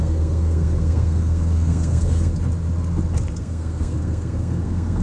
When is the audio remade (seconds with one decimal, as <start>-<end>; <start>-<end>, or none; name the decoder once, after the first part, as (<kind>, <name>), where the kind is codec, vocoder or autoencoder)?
0.0-2.3 (codec, SNAC); 3.4-5.0